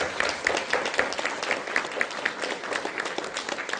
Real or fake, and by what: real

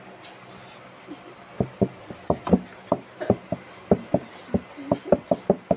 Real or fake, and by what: real